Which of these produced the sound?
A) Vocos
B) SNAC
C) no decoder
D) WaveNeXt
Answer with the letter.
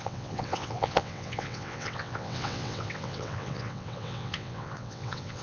D